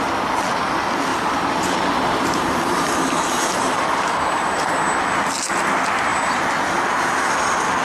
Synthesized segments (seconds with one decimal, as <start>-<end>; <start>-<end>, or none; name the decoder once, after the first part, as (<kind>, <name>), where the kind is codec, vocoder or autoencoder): 1.1-4.7 (vocoder, BigVGAN v2)

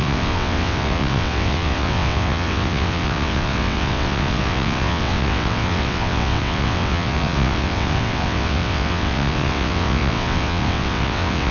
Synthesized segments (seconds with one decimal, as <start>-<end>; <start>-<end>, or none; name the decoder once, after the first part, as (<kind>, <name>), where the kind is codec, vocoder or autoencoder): 0.0-11.5 (vocoder, WaveNeXt)

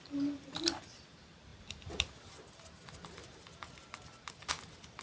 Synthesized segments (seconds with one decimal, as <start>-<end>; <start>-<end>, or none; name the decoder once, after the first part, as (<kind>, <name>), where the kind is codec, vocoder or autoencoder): none